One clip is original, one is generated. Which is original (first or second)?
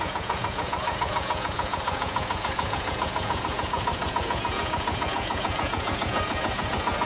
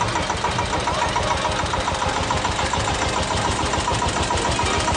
second